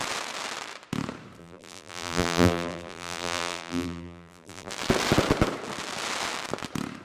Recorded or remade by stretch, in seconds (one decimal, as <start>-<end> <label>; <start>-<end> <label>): 0.0-1.4 recorded; 1.4-4.7 remade; 4.7-7.0 recorded